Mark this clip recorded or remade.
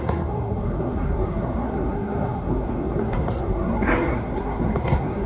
remade